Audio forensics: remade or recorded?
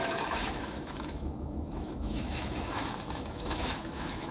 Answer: remade